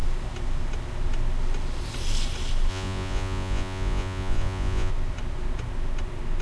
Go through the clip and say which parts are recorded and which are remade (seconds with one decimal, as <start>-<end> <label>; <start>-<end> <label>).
0.0-2.7 recorded; 2.7-4.9 remade; 4.9-6.4 recorded